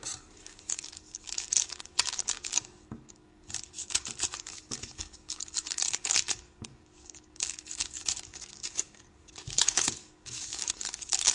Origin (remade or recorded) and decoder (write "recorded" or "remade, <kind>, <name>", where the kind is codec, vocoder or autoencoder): remade, codec, DAC